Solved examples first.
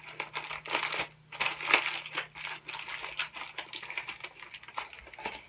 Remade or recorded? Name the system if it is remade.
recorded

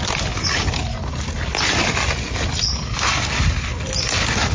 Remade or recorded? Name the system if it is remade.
recorded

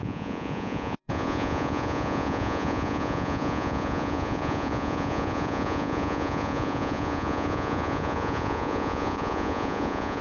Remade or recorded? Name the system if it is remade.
remade, vocoder, Vocos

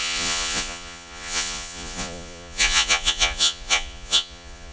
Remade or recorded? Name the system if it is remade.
remade, vocoder, Vocos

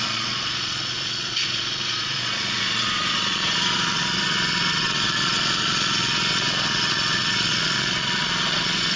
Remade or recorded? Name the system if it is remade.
remade, vocoder, Vocos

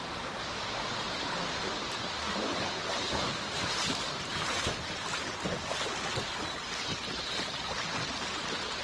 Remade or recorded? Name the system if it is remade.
recorded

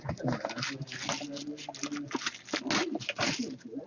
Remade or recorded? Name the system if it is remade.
recorded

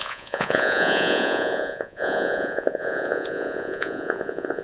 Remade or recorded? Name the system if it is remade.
remade, vocoder, Vocos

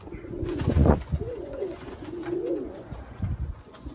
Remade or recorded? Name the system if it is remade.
remade, vocoder, Vocos